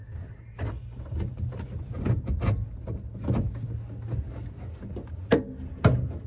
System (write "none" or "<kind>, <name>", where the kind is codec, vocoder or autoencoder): none